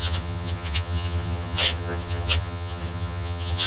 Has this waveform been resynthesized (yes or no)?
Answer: yes